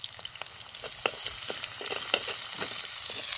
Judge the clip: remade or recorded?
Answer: recorded